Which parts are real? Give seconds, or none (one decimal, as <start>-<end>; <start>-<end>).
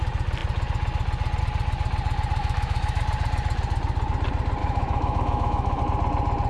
0.0-2.4; 3.0-4.6; 5.8-6.5